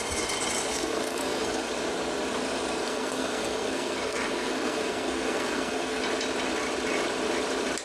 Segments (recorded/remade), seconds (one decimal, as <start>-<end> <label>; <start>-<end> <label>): 0.0-0.7 recorded; 0.7-1.7 remade; 1.7-2.8 recorded; 2.8-6.0 remade; 6.0-7.8 recorded